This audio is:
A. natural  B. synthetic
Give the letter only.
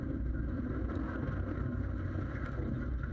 A